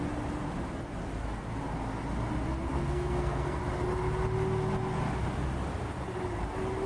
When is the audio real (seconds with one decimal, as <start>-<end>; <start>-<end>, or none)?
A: 0.0-2.7; 3.6-6.9